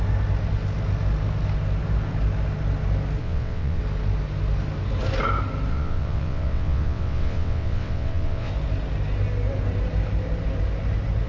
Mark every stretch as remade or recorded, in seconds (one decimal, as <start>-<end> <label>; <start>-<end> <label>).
0.0-3.2 recorded; 3.2-3.8 remade; 3.8-5.7 recorded; 5.7-8.5 remade; 8.5-11.3 recorded